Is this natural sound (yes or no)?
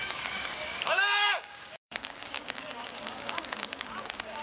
no